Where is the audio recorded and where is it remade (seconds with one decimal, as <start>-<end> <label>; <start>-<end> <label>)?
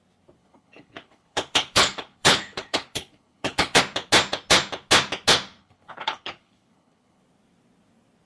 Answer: 0.0-0.4 recorded; 0.4-3.8 remade; 3.8-5.6 recorded; 5.6-7.2 remade; 7.2-8.3 recorded